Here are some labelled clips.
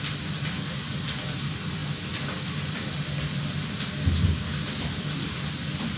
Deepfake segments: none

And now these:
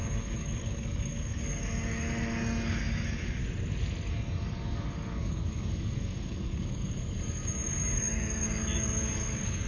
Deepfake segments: 0.0-3.4 (codec, DAC); 4.1-9.7

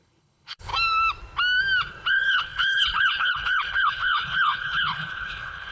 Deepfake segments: 0.0-0.7 (codec, HILCodec); 2.1-5.7

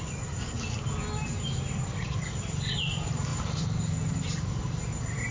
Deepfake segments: none

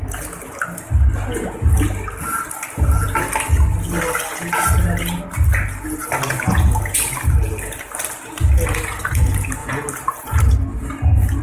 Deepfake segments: none

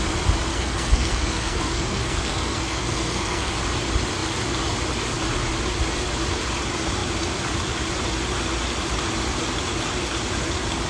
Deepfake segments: 0.5-3.5 (codec, SNAC)